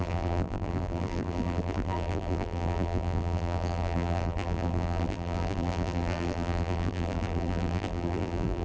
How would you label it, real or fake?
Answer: fake